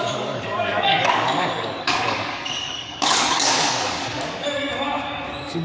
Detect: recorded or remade remade